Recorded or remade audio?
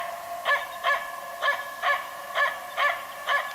recorded